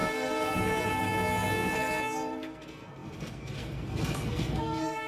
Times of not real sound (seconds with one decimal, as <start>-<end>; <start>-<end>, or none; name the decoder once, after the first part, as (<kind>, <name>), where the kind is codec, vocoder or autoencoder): 0.0-5.1 (codec, SNAC)